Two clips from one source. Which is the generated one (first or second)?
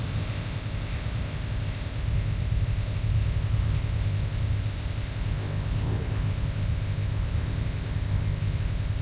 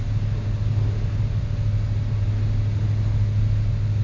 first